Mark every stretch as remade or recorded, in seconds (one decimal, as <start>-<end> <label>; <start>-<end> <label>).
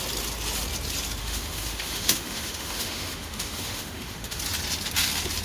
0.0-1.2 recorded; 1.2-4.4 remade; 4.4-5.4 recorded